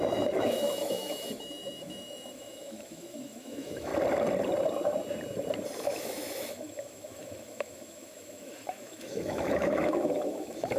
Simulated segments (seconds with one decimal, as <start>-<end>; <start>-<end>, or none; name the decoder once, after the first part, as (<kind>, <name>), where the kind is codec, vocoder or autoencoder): 0.0-3.9 (autoencoder, DAC-VAE); 5.8-10.8